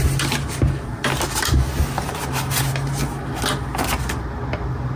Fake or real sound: real